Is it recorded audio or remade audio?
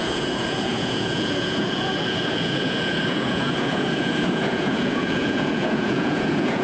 remade